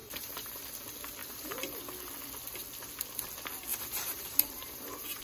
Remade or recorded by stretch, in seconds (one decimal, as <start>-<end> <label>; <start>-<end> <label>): 0.0-0.6 remade; 0.6-1.2 recorded; 1.2-1.8 remade; 1.8-3.7 recorded; 3.7-5.2 remade

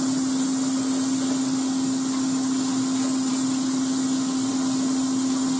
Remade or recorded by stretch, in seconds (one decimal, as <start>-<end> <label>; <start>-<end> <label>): 0.0-5.6 recorded